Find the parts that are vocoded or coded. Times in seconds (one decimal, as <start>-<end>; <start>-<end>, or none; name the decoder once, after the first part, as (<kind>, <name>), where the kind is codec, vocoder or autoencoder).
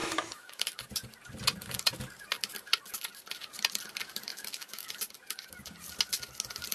0.0-0.6 (autoencoder, DAC-VAE); 4.3-4.9